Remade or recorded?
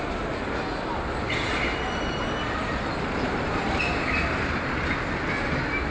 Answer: recorded